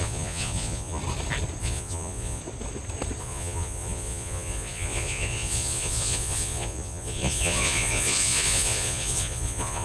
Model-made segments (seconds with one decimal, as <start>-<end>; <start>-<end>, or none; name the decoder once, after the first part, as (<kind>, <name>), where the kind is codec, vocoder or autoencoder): 0.0-1.0 (vocoder, Vocos); 1.6-2.4; 3.2-9.8